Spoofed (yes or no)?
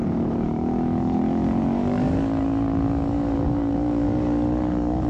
yes